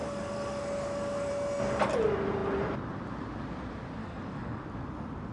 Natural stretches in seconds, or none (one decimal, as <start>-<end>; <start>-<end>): 1.3-4.0; 4.6-5.3